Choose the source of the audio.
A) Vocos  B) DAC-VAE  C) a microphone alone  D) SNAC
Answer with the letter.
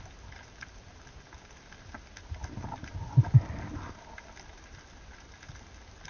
C